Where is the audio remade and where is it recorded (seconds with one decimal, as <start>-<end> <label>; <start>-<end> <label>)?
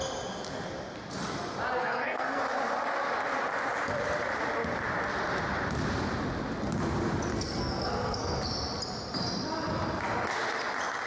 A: 0.0-1.8 recorded; 1.8-2.4 remade; 2.4-7.3 recorded; 7.3-8.4 remade; 8.4-11.1 recorded